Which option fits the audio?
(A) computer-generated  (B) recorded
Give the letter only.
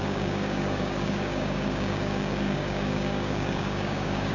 A